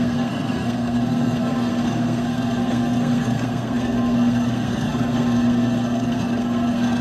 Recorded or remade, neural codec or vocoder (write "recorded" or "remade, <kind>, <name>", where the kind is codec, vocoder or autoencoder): remade, codec, SNAC